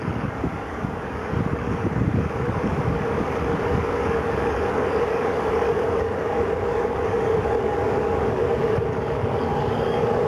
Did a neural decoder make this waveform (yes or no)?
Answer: yes